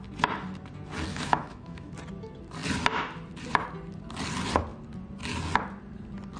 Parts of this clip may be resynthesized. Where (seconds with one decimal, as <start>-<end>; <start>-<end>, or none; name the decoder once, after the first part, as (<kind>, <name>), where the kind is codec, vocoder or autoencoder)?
1.1-1.9 (autoencoder, DAC-VAE)